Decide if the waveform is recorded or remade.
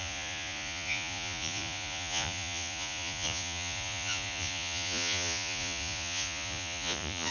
remade